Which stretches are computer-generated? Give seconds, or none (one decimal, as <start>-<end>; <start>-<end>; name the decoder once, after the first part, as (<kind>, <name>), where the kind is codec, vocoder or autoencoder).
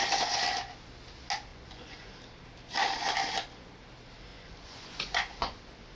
1.5-2.1 (vocoder, Vocos); 4.3-5.6